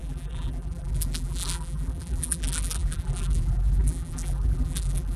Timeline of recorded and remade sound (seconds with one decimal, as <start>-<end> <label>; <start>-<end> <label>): 0.0-5.2 remade